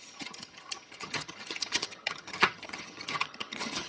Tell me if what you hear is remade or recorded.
remade